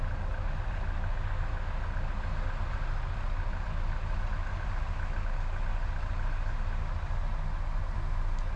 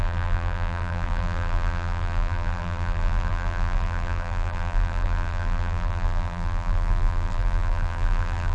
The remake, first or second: second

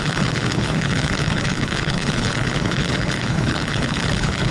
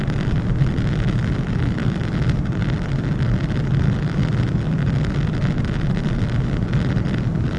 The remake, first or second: first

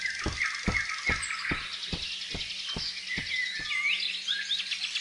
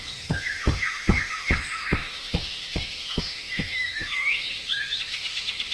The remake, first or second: second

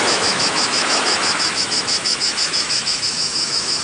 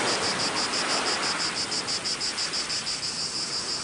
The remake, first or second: first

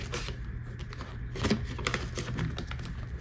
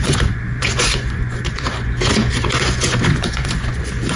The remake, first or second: second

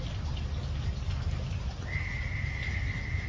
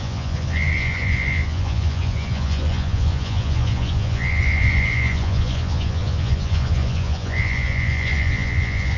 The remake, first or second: second